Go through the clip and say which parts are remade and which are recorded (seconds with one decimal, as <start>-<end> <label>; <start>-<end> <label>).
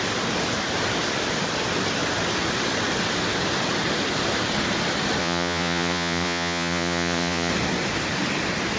0.0-5.2 recorded; 5.2-7.5 remade; 7.5-8.8 recorded